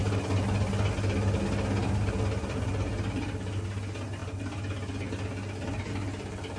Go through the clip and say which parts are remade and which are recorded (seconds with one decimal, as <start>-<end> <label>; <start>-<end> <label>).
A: 0.0-6.6 recorded